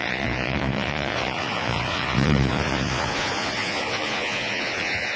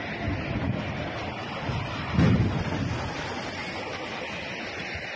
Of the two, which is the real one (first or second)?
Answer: second